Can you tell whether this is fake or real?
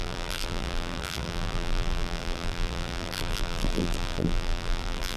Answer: fake